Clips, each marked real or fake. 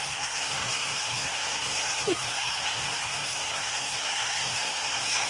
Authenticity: fake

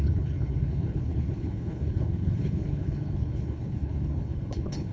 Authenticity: fake